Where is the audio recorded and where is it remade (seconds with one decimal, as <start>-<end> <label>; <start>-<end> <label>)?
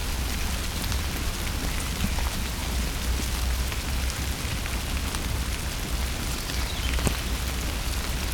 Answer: 0.0-8.3 recorded